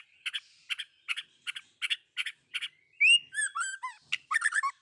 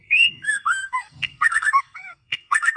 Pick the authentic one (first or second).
first